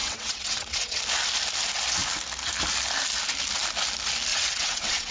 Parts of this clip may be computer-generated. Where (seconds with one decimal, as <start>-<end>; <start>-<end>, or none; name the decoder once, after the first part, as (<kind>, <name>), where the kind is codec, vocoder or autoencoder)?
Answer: 0.0-1.0 (vocoder, WaveNeXt); 4.3-5.1